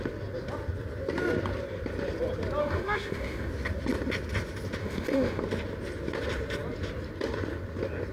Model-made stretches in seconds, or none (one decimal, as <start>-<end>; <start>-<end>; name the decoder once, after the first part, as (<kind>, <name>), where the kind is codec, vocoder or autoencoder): 2.6-3.5 (autoencoder, DAC-VAE); 4.8-5.4